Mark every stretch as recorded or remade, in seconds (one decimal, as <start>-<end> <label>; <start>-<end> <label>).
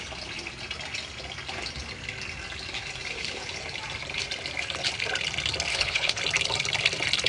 0.0-5.7 recorded; 5.7-6.2 remade; 6.2-7.3 recorded